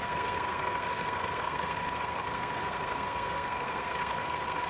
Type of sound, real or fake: fake